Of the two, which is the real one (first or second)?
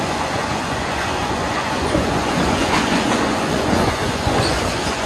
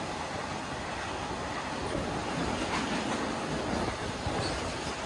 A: second